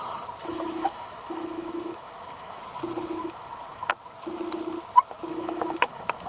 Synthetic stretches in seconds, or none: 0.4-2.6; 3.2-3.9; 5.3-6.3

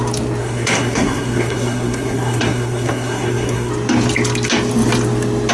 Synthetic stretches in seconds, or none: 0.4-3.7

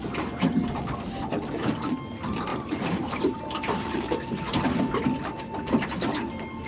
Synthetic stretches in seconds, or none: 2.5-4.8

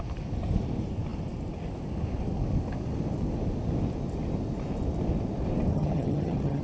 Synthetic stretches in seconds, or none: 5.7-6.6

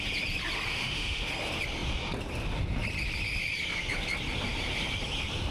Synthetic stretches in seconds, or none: 0.7-1.3

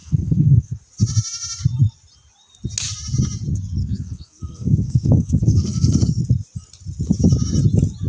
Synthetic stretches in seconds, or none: 0.0-0.8; 3.8-6.2